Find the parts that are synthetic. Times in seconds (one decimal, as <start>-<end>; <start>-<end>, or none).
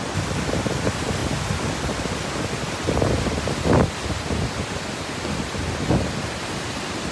none